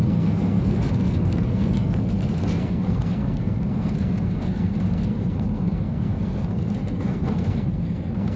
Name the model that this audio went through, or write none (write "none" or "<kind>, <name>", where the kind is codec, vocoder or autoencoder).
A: codec, SNAC